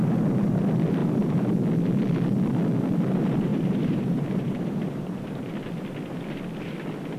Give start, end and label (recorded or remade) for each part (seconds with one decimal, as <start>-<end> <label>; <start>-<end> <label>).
0.0-1.0 recorded; 1.0-1.6 remade; 1.6-3.5 recorded; 3.5-5.5 remade; 5.5-7.2 recorded